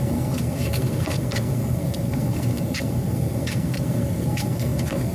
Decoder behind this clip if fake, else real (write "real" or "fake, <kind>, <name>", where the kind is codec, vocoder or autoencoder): fake, codec, SNAC